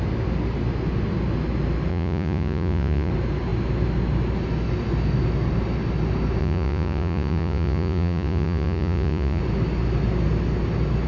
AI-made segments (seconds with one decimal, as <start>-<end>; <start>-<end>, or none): 1.9-3.1; 6.4-9.4